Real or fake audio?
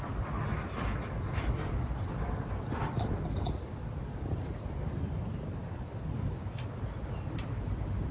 real